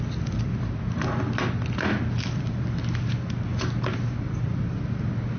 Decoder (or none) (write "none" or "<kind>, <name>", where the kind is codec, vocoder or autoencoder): none